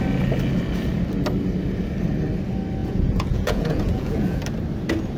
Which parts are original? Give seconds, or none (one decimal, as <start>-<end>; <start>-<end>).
0.0-2.8; 4.4-5.2